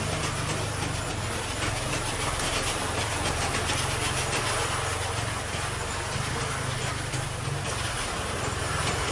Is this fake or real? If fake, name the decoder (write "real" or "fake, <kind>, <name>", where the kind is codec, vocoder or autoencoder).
real